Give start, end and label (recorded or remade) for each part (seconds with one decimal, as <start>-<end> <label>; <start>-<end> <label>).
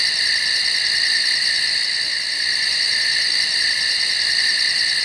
0.0-5.0 recorded